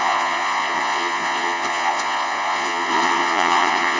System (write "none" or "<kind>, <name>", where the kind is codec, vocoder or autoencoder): vocoder, Vocos